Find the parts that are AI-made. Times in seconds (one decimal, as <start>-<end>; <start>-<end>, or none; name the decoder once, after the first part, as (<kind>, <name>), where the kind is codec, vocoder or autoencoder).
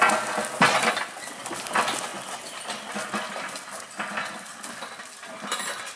none